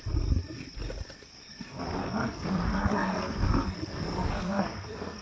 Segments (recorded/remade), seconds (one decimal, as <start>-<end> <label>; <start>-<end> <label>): 0.0-2.0 recorded; 2.0-5.2 remade